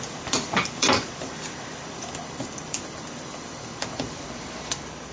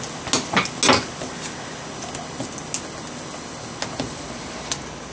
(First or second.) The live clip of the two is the second